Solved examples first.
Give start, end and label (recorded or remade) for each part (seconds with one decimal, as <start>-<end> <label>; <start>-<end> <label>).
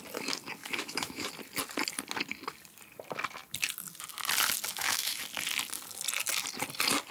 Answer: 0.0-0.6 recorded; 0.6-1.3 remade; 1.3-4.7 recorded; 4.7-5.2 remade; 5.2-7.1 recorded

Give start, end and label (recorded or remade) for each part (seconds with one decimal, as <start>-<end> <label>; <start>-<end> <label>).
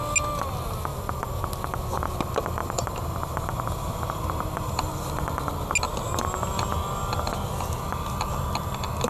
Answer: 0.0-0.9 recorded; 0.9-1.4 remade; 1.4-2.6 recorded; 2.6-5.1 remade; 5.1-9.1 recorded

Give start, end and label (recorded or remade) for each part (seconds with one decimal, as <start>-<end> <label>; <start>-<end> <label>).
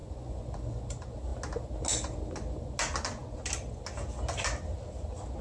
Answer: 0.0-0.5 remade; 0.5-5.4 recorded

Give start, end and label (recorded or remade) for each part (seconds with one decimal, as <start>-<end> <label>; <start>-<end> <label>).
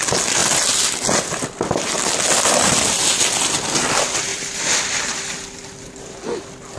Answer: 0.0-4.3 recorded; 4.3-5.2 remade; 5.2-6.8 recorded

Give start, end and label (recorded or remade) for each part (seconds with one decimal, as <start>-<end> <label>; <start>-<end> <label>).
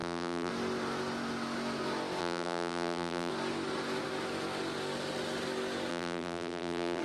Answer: 0.0-0.5 remade; 0.5-2.2 recorded; 2.2-3.3 remade; 3.3-5.9 recorded; 5.9-7.0 remade